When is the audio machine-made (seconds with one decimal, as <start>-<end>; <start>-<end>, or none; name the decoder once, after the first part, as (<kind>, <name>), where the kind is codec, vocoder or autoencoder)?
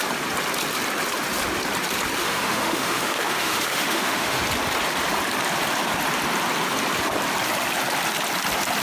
2.2-4.4 (autoencoder, DAC-VAE)